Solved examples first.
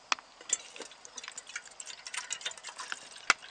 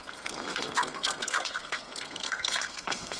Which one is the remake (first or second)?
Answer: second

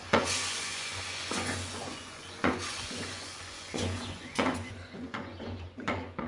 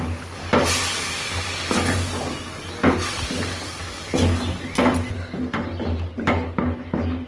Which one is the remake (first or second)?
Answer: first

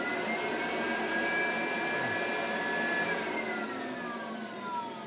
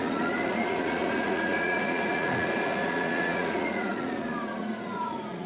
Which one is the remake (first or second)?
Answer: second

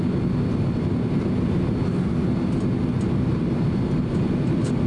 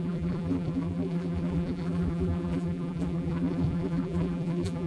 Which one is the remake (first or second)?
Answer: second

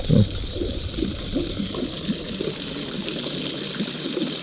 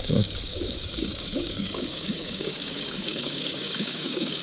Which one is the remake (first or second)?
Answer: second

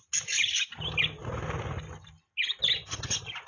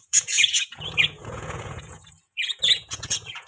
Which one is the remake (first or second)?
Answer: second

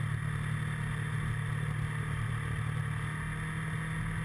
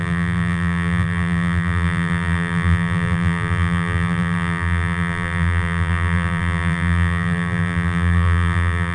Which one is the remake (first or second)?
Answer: second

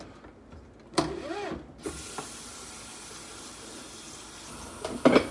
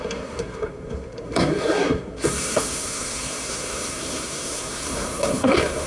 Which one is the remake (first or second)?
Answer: second